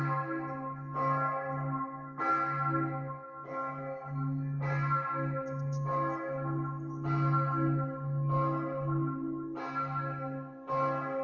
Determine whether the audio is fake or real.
real